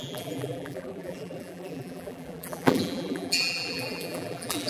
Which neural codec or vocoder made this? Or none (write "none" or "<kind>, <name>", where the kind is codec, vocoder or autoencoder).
vocoder, BigVGAN v2